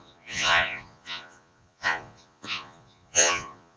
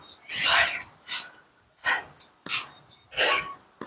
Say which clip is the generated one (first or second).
first